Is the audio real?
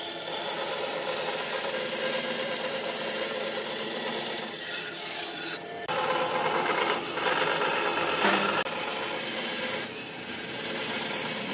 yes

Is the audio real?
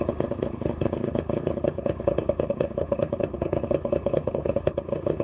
no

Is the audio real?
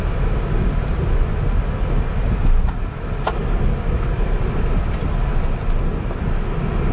yes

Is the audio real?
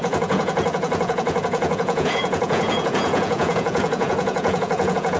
no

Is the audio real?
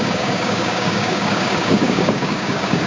no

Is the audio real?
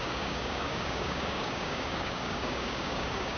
no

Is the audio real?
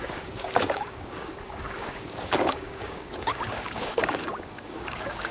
no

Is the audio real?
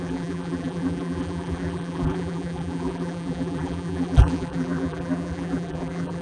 no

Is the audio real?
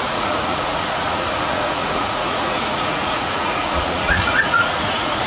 no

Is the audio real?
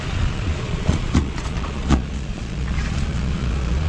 no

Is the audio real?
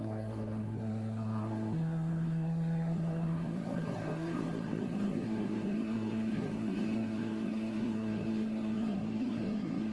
no